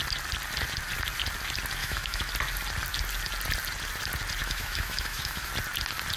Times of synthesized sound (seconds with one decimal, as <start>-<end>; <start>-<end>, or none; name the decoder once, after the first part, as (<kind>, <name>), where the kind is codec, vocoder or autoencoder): 1.8-2.3 (autoencoder, DAC-VAE); 4.4-5.5